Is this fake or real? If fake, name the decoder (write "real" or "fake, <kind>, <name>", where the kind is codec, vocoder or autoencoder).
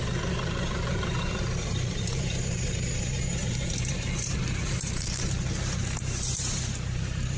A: fake, vocoder, BigVGAN v2